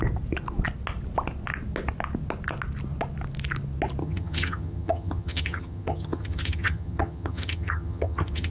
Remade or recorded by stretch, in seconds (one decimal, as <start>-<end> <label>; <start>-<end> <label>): 0.0-4.0 recorded; 4.0-8.5 remade